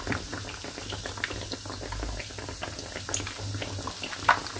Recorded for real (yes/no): yes